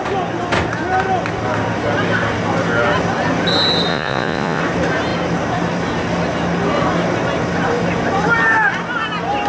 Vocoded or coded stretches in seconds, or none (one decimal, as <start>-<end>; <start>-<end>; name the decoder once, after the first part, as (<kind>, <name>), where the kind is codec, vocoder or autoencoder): 3.9-4.6 (vocoder, Vocos)